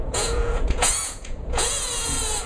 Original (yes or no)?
no